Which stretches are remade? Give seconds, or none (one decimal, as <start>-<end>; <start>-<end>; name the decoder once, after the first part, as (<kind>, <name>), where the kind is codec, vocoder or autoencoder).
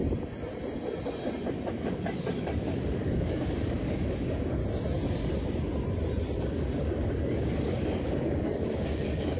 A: 1.7-4.6 (codec, DAC); 6.4-9.4